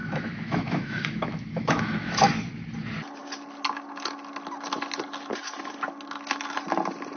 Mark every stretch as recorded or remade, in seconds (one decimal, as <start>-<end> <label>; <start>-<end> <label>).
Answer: 0.0-2.3 remade; 2.3-7.2 recorded